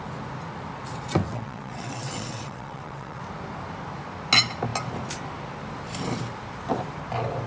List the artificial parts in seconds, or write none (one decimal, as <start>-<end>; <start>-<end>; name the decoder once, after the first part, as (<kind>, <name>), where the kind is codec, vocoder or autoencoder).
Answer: 1.2-3.2 (vocoder, WaveNeXt)